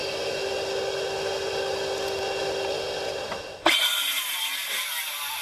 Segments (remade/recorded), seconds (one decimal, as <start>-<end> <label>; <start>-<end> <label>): 0.0-5.4 recorded